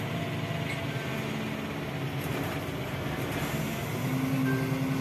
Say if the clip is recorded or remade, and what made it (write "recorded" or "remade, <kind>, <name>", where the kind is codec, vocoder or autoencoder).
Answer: recorded